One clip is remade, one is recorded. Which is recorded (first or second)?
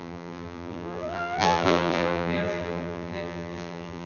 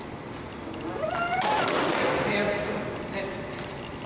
second